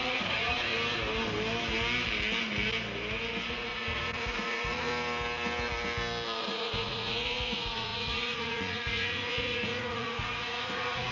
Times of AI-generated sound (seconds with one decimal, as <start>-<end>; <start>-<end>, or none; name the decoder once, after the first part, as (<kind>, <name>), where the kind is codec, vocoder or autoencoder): 0.0-0.7 (vocoder, Vocos); 3.5-4.9; 6.4-11.1

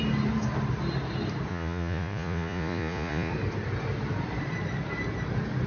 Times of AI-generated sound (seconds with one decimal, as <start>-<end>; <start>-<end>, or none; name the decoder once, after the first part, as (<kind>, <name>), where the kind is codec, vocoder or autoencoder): 1.5-3.3 (vocoder, Vocos)

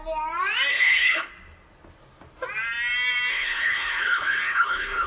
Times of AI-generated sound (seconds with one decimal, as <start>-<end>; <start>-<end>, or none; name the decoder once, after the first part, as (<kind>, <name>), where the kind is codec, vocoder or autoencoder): 0.7-1.3 (codec, HILCodec); 3.3-5.1

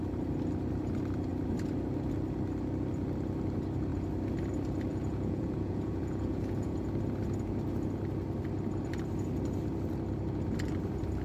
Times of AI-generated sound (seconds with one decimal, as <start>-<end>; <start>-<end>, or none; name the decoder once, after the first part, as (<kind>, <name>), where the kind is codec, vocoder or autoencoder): 4.9-6.9 (vocoder, Vocos)

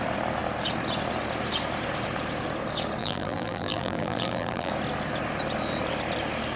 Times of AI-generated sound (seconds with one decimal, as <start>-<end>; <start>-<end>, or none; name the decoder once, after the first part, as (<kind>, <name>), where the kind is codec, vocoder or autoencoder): 3.0-4.7 (vocoder, BigVGAN v2)

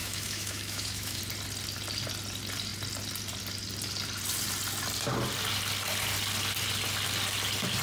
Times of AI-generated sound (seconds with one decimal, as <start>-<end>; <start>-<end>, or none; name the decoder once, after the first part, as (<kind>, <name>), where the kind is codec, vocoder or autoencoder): 0.0-1.2 (autoencoder, DAC-VAE)

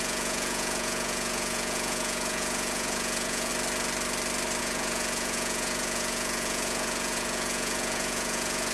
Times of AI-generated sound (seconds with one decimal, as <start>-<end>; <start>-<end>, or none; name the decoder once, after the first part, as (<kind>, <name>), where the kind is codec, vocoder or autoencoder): 0.0-3.5 (vocoder, Vocos); 4.6-8.7

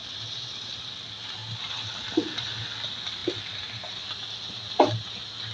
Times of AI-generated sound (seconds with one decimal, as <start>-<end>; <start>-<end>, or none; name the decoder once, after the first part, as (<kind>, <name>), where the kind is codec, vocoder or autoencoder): 0.0-0.8 (vocoder, BigVGAN v2); 3.2-5.1